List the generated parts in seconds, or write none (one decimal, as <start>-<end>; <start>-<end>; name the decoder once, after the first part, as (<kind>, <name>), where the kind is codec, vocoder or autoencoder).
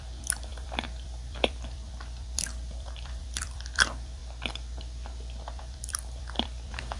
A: 0.0-4.2 (vocoder, BigVGAN v2); 5.6-7.0